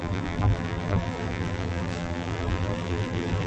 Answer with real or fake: fake